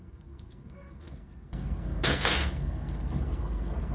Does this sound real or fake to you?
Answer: fake